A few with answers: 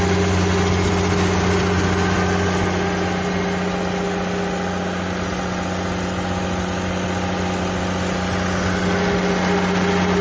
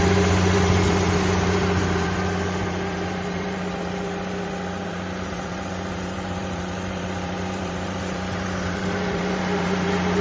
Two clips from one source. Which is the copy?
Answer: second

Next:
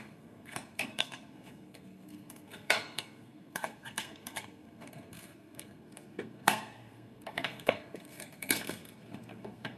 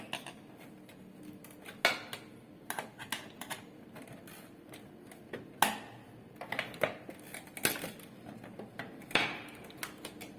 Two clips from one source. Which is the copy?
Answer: first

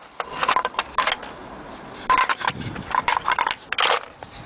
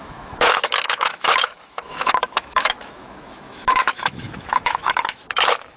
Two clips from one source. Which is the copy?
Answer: second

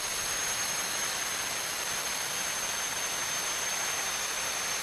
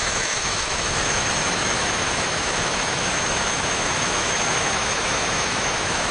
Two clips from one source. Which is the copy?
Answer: second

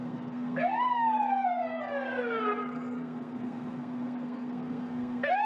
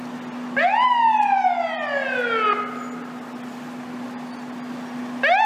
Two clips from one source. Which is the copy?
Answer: first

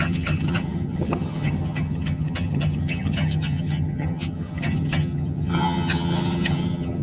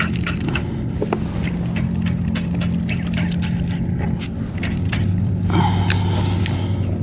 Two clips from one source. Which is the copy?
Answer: first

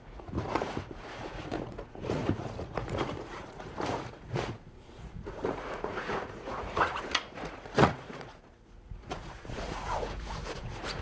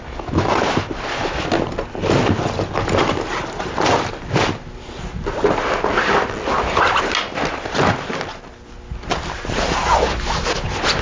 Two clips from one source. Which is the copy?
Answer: first